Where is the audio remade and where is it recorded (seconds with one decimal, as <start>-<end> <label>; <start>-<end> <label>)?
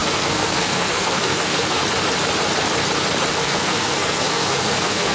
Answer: 0.0-1.8 remade; 1.8-3.3 recorded; 3.3-5.1 remade